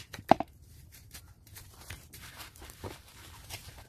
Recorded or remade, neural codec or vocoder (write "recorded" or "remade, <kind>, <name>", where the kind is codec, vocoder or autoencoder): remade, vocoder, BigVGAN v2